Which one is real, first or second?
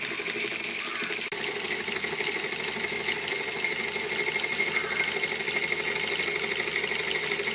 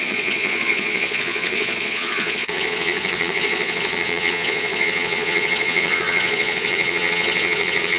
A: first